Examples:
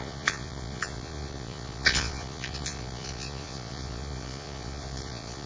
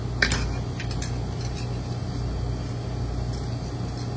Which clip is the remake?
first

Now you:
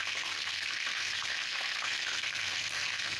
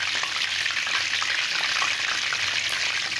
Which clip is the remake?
first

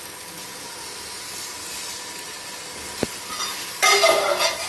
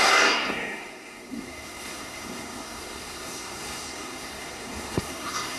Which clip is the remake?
second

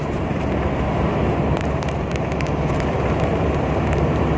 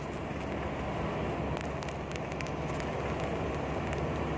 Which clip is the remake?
first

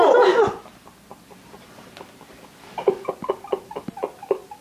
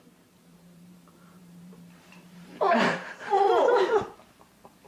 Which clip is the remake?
second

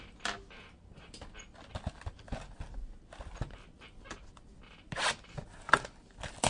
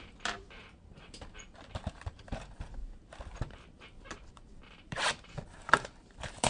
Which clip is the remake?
second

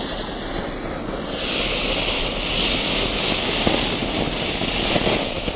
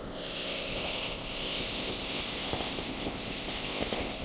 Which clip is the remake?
second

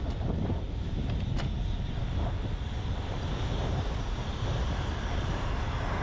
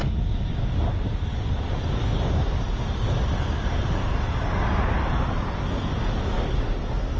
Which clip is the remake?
first